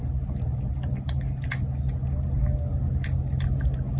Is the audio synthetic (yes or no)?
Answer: no